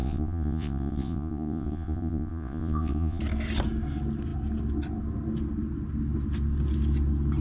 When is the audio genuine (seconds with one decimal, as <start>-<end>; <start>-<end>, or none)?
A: 3.2-7.4